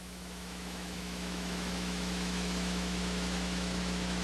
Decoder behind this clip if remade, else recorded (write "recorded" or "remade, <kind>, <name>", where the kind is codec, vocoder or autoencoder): remade, autoencoder, DAC-VAE